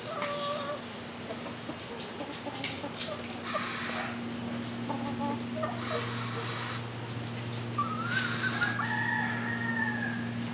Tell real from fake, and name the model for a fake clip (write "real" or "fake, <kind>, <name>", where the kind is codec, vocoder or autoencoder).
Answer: real